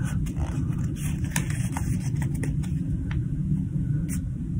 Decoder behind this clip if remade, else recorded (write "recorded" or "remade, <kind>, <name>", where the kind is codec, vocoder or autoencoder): recorded